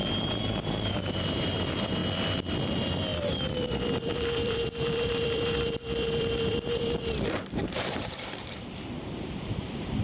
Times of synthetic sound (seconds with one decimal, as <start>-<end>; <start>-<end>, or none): 0.0-2.0; 2.5-10.0